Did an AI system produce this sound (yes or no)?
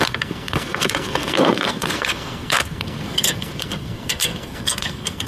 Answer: yes